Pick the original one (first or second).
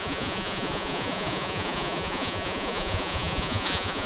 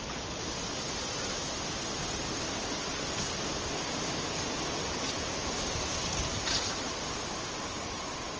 second